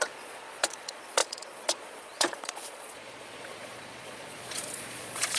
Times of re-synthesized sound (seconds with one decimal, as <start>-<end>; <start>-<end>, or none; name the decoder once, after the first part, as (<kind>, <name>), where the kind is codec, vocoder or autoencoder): 0.0-5.4 (vocoder, Vocos)

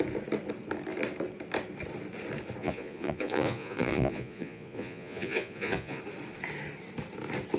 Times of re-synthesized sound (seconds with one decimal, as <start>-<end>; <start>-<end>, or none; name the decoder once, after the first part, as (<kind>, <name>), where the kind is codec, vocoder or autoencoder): 2.6-6.0 (vocoder, Vocos)

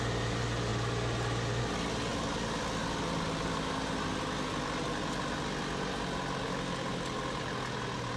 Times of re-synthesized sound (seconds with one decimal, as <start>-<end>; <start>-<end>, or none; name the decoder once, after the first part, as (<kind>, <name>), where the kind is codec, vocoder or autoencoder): none

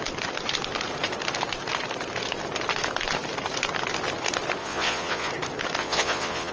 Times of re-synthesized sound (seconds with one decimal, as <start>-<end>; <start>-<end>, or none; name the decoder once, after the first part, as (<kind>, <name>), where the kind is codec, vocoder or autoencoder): 4.6-5.3 (vocoder, Vocos); 5.8-6.5

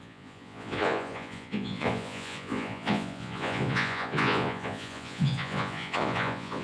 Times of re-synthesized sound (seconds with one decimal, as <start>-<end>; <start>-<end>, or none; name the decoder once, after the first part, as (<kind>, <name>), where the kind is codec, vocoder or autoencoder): 0.0-6.6 (vocoder, Vocos)

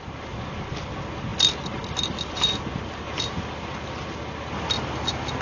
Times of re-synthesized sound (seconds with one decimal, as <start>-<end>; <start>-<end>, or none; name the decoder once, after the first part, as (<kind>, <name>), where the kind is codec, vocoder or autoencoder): none

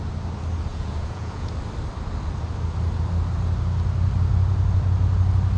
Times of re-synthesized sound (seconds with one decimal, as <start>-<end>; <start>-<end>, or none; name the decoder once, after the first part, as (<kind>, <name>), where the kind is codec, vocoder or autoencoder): 0.7-1.5 (vocoder, Vocos)